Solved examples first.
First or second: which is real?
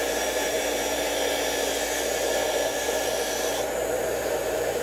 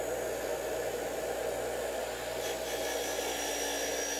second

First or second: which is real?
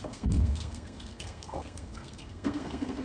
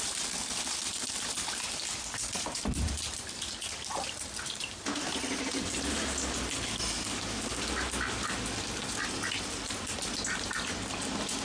second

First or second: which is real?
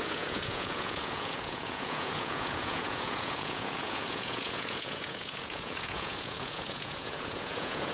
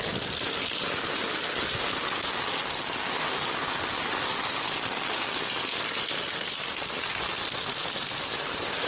second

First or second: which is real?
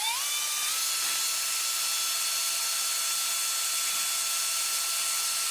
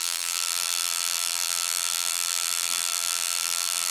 first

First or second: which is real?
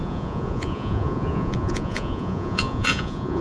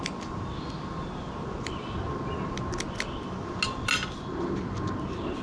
second